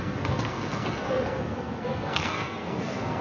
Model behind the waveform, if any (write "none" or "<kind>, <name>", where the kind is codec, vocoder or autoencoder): codec, SNAC